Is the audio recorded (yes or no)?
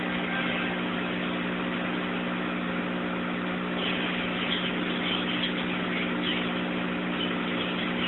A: yes